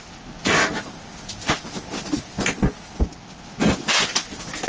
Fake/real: real